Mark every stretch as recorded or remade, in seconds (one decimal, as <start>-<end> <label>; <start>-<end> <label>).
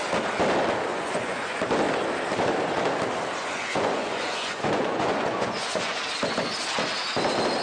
0.0-0.9 recorded; 0.9-1.6 remade; 1.6-3.4 recorded; 3.4-6.0 remade; 6.0-7.6 recorded